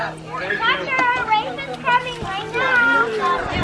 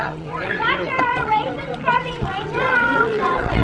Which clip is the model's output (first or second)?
second